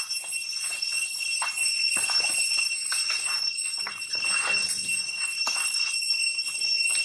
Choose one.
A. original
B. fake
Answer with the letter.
A